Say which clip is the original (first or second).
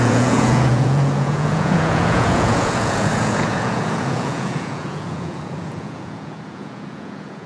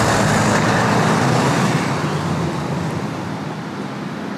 second